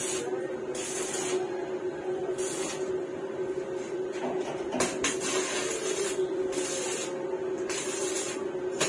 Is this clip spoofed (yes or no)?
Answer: no